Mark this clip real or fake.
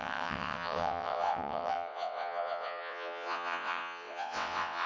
fake